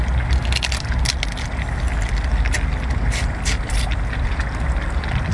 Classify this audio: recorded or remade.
recorded